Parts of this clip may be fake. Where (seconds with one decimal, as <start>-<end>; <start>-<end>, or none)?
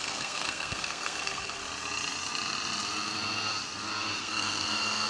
0.0-1.6; 4.2-5.1